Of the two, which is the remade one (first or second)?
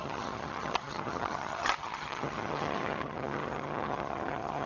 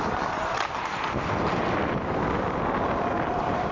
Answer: first